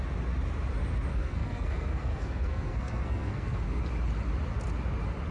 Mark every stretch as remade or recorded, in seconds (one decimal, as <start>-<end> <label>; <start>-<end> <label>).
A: 0.0-1.1 recorded; 1.1-3.8 remade; 3.8-5.3 recorded